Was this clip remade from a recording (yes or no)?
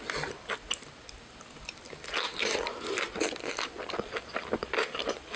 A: no